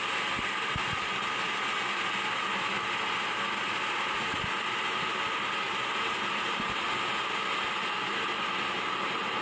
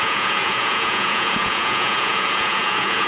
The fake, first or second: second